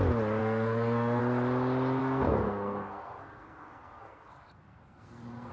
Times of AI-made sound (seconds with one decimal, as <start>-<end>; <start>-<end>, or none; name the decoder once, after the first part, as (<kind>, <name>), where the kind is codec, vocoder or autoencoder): 0.4-1.2 (codec, SNAC); 2.0-5.5